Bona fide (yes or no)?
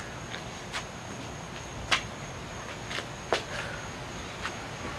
yes